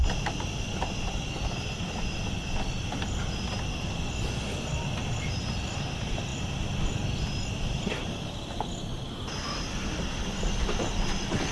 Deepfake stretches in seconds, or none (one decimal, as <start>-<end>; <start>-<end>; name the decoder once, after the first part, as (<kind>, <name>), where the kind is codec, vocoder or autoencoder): none